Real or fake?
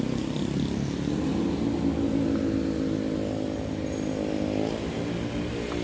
real